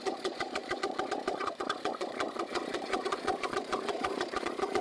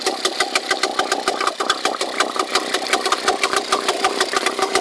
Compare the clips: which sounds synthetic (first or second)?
first